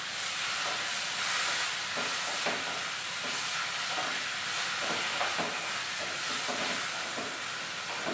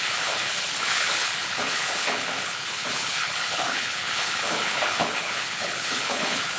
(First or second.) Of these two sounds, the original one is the first